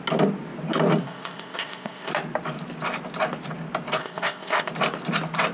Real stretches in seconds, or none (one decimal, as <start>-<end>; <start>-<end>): 0.0-1.0; 2.1-4.0; 4.7-5.5